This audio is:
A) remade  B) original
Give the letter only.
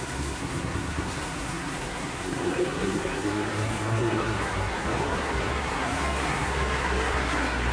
A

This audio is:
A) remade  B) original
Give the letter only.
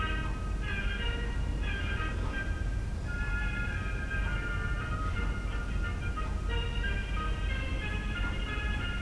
B